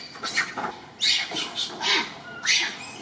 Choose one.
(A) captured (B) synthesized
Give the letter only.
A